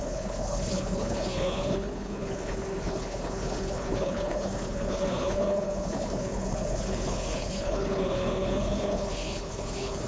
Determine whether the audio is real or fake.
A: fake